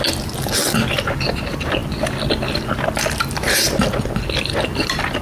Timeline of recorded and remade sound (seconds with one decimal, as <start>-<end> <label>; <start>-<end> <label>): 0.0-5.2 recorded